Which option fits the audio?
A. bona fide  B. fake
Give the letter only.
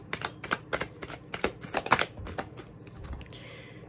A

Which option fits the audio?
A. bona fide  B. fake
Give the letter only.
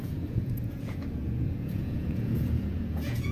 B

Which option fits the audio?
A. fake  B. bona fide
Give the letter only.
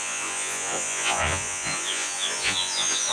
A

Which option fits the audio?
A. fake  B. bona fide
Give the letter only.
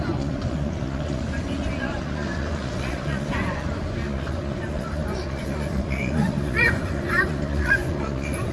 A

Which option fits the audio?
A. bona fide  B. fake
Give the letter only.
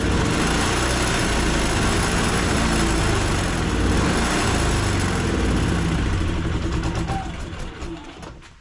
A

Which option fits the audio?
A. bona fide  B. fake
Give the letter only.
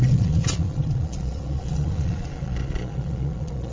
B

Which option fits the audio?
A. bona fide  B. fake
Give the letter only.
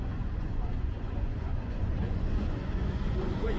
B